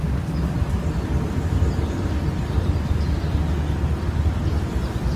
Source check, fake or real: real